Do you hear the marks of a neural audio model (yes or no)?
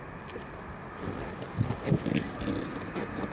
no